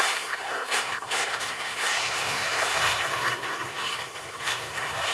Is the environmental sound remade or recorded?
remade